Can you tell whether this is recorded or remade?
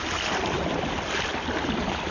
recorded